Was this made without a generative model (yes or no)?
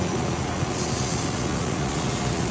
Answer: no